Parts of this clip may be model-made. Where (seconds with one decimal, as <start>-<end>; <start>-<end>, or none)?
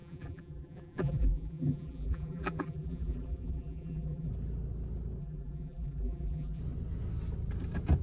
0.0-4.3; 5.2-6.6